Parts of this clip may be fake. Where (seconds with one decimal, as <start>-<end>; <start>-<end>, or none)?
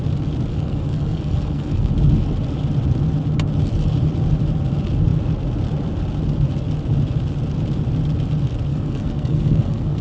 0.5-1.9; 8.7-10.0